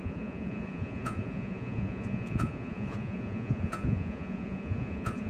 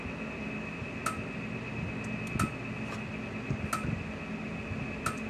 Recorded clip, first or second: second